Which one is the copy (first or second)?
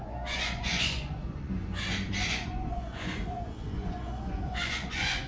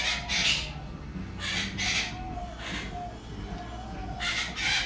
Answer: first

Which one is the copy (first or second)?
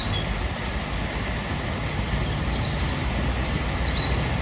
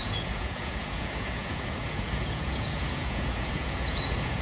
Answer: second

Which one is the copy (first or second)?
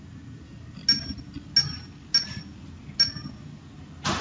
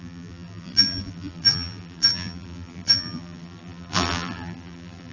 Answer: second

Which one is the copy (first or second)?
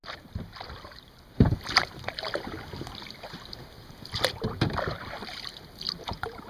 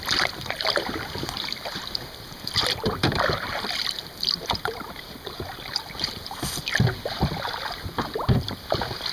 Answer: second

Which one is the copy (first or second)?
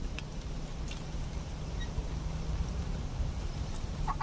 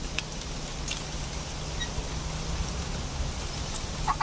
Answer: first